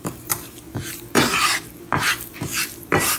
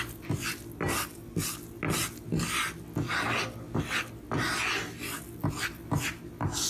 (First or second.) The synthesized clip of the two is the first